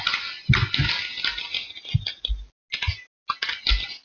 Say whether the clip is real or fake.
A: real